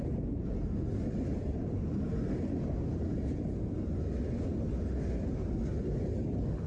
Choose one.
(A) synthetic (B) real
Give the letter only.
B